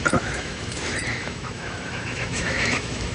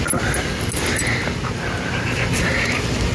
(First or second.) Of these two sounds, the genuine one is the second